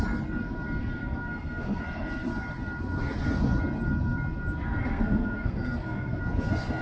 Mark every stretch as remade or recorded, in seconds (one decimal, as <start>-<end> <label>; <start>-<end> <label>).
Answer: 0.0-1.0 recorded; 1.0-1.8 remade; 1.8-4.7 recorded; 4.7-6.2 remade; 6.2-6.8 recorded